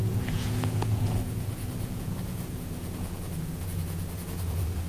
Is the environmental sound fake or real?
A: fake